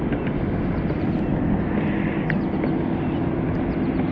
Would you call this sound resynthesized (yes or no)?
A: no